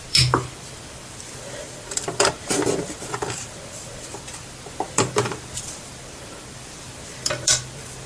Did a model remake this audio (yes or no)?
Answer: yes